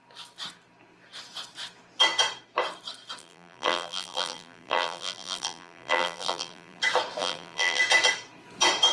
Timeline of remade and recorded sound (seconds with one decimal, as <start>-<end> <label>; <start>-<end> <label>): 0.0-3.2 recorded; 3.2-6.8 remade; 6.8-7.2 recorded; 7.2-7.8 remade; 7.8-8.9 recorded